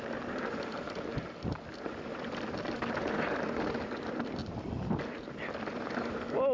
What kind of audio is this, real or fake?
real